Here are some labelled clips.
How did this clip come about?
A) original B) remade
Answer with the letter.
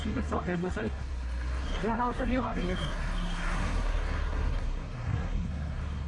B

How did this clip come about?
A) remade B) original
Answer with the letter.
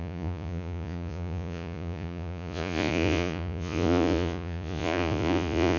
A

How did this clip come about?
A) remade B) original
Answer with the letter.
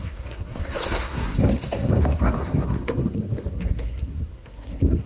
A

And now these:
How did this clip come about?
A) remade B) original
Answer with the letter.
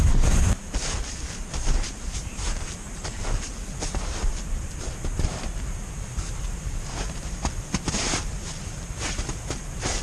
A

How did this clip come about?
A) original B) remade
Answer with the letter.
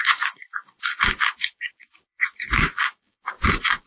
B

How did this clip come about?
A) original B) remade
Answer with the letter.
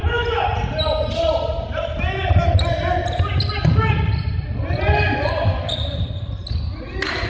A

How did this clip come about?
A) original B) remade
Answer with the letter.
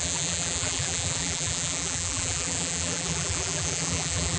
B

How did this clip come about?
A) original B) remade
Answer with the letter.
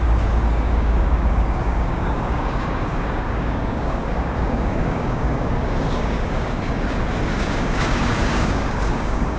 B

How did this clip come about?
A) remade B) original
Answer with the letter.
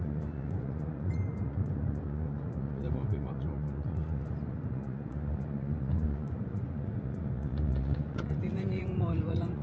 A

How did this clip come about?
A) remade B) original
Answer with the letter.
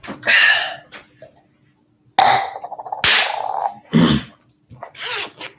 B